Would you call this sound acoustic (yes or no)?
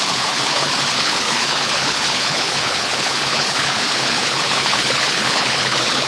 no